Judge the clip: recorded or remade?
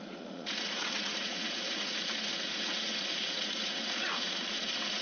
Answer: remade